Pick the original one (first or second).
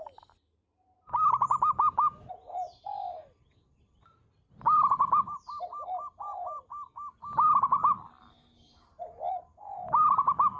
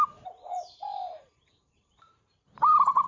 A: first